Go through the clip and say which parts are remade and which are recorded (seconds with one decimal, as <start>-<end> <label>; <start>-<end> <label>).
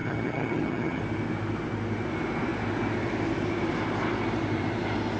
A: 0.0-1.0 remade; 1.0-5.2 recorded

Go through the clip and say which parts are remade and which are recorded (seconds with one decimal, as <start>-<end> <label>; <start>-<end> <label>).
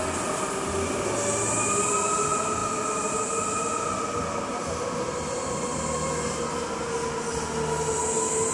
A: 0.0-8.5 recorded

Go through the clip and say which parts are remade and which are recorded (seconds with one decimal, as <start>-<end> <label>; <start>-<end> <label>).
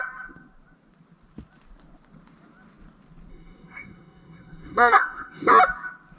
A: 0.0-3.3 recorded; 3.3-5.5 remade; 5.5-6.2 recorded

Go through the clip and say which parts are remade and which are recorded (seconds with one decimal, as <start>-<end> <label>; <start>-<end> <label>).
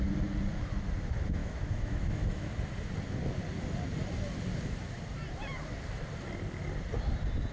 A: 0.0-1.4 recorded; 1.4-2.5 remade; 2.5-7.5 recorded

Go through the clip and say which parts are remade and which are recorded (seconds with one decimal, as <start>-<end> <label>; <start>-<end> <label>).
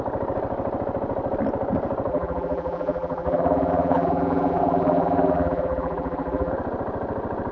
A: 0.0-2.1 recorded; 2.1-6.5 remade; 6.5-7.5 recorded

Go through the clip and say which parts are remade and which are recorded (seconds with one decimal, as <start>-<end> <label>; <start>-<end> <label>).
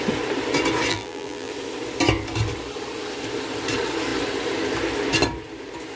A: 0.0-0.9 recorded; 0.9-1.5 remade; 1.5-6.0 recorded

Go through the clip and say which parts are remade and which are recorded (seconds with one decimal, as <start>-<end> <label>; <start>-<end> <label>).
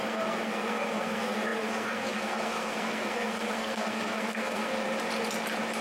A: 0.0-4.7 remade; 4.7-5.8 recorded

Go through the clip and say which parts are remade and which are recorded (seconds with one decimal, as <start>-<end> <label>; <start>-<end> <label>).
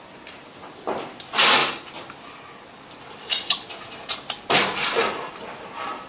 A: 0.0-1.6 recorded; 1.6-5.3 remade; 5.3-6.1 recorded